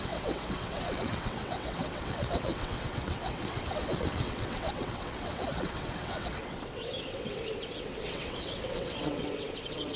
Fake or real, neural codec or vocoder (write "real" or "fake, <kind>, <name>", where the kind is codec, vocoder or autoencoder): fake, vocoder, WaveNeXt